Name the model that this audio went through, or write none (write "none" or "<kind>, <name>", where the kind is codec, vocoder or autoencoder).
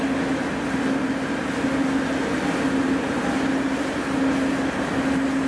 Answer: none